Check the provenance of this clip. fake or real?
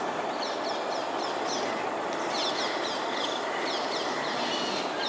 real